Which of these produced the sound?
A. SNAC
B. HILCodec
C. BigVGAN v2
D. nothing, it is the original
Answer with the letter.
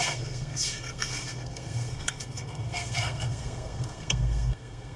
A